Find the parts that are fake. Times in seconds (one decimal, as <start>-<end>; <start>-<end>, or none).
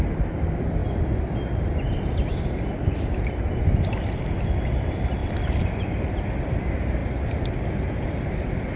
none